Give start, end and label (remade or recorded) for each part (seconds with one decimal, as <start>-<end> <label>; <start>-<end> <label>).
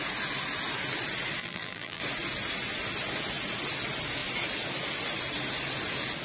0.0-1.4 recorded; 1.4-2.0 remade; 2.0-6.2 recorded